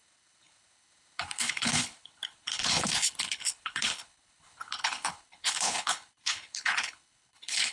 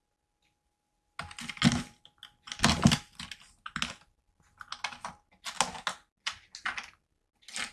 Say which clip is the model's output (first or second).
first